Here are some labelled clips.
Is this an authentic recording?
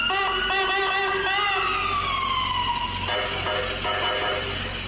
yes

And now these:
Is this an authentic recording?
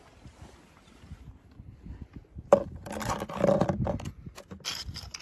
yes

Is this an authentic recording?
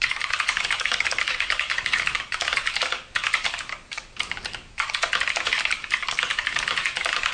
no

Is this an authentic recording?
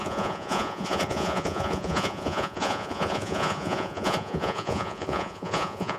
no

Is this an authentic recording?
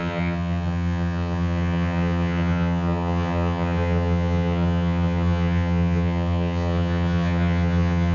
no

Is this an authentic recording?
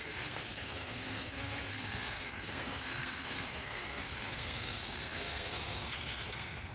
no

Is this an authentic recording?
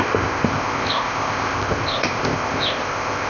no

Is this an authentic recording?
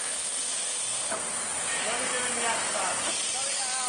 yes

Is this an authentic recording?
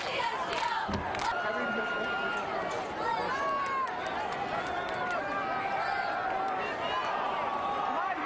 yes